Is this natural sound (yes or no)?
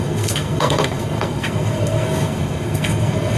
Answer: no